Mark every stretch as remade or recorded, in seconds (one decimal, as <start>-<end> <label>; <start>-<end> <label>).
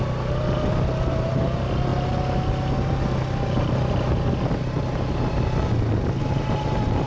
0.0-7.1 recorded